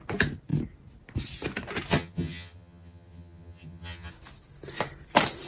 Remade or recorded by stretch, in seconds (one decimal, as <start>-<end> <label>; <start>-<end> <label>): 0.0-1.9 recorded; 1.9-4.1 remade; 4.1-5.5 recorded